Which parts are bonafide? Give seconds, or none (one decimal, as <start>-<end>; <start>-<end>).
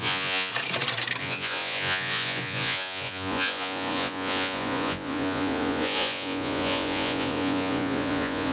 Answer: 0.5-1.2